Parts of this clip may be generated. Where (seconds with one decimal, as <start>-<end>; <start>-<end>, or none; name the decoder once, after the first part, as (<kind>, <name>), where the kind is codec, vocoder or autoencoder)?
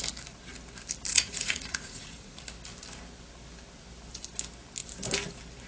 1.1-2.4 (vocoder, Vocos)